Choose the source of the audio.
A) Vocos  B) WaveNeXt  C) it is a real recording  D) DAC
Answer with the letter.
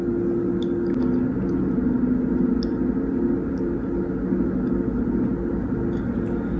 C